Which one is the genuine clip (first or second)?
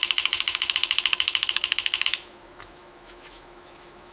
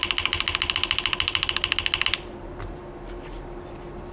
second